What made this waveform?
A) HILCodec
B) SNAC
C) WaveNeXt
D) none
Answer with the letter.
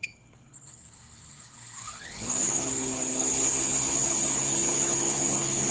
A